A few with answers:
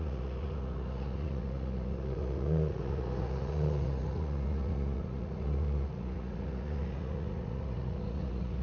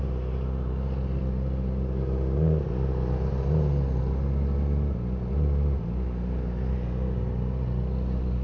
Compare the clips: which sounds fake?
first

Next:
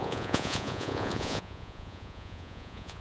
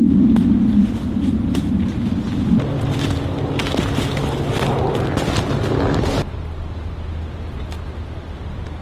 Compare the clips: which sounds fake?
first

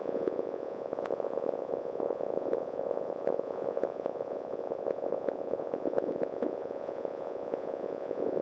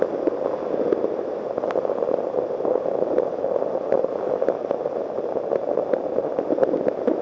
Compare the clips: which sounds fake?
first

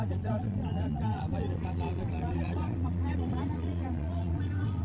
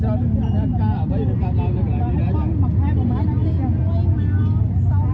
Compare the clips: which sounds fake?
first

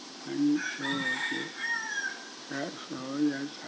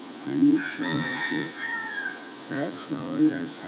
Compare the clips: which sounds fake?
second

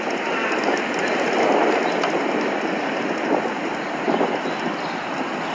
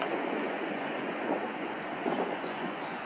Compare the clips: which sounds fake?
second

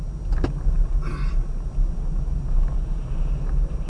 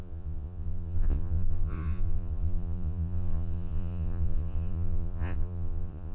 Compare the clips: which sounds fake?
second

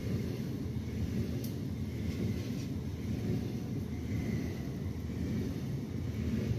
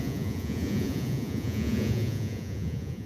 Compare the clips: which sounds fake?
second